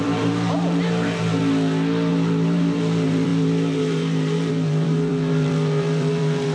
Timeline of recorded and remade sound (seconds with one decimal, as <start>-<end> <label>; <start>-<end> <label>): 0.0-1.4 remade; 1.4-2.1 recorded; 2.1-6.5 remade